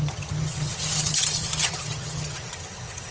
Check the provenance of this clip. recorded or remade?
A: remade